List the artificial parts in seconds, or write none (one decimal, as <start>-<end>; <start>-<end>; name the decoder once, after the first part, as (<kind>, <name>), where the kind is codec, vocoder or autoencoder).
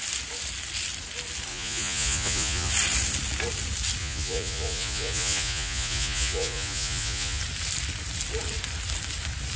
1.5-2.7 (vocoder, Vocos); 4.0-7.4